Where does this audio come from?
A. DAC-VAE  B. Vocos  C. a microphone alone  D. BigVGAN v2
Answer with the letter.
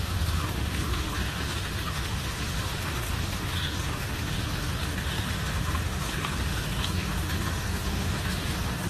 A